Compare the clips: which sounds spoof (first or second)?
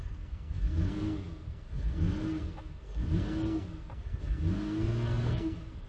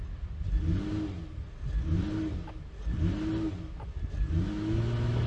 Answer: first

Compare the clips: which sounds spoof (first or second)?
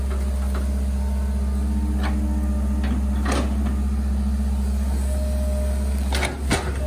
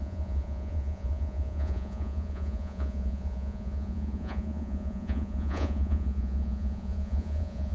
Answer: second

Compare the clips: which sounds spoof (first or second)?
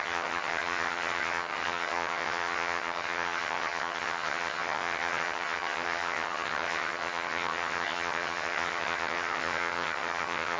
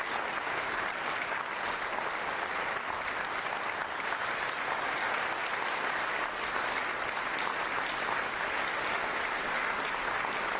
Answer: first